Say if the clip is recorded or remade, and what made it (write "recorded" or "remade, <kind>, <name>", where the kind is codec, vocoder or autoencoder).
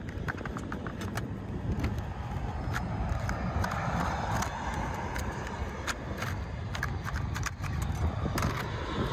recorded